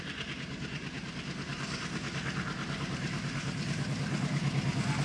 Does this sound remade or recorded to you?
recorded